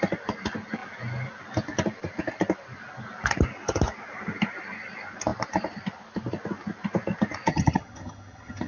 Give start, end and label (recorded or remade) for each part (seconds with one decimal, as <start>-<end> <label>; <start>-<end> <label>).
0.0-7.5 recorded; 7.5-8.7 remade